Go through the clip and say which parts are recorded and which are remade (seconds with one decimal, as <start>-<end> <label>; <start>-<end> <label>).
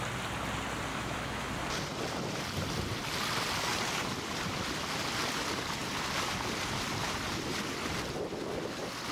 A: 0.0-0.9 recorded; 0.9-1.5 remade; 1.5-9.1 recorded